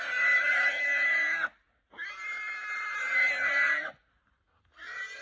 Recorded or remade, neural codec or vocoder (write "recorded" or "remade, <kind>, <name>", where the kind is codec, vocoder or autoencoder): recorded